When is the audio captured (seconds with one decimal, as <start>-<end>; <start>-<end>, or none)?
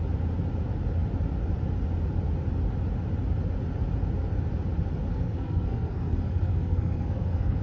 0.0-5.1